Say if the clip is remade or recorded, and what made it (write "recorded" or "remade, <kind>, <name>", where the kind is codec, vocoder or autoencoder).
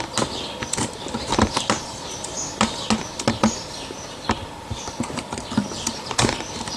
recorded